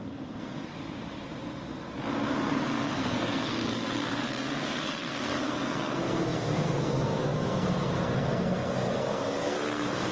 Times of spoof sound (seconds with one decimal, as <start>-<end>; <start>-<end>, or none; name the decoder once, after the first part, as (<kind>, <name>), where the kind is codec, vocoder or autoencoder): 0.0-0.7 (codec, SNAC); 2.4-10.1